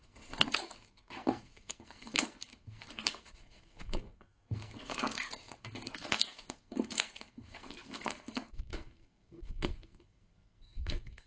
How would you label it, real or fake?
fake